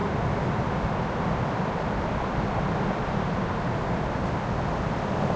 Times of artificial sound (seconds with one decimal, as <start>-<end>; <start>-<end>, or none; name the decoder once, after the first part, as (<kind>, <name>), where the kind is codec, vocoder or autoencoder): 0.0-3.2 (vocoder, BigVGAN v2)